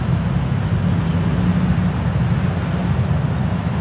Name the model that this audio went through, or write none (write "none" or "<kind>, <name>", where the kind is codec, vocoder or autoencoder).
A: none